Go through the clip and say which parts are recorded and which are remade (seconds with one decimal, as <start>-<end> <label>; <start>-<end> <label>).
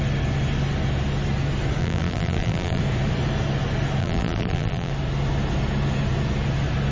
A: 0.0-1.8 recorded; 1.8-2.8 remade; 2.8-4.0 recorded; 4.0-4.9 remade; 4.9-6.9 recorded